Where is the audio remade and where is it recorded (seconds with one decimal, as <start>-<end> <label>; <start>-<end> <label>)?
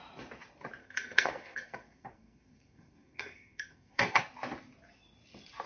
0.0-0.8 recorded; 0.8-4.2 remade; 4.2-5.7 recorded